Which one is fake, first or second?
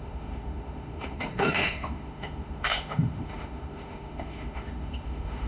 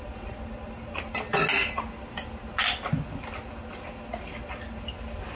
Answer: first